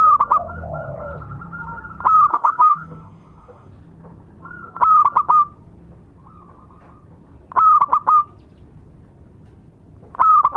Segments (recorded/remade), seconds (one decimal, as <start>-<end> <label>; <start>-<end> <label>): 0.0-2.3 recorded; 2.3-3.7 remade; 3.7-10.6 recorded